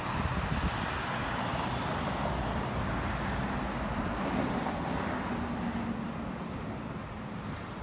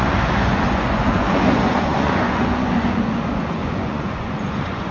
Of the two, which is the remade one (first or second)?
second